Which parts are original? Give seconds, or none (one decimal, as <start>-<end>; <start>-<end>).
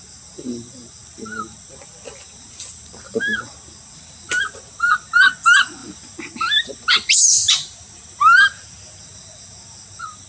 0.0-10.3